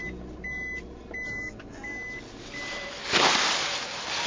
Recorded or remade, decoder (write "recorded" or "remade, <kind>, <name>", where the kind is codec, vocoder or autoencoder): recorded